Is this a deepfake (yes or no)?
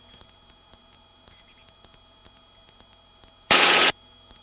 yes